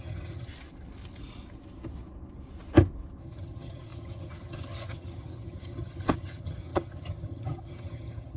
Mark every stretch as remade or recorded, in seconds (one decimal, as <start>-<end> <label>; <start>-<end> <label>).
0.0-0.5 remade; 0.5-3.2 recorded; 3.2-8.4 remade